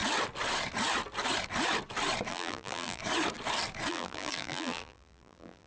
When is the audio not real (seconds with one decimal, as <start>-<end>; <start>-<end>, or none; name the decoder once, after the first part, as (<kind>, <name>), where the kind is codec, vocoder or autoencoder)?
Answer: 2.3-3.0 (vocoder, BigVGAN v2); 3.9-5.7